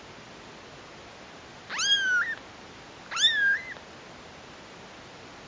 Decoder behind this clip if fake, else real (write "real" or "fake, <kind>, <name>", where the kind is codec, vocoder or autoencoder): real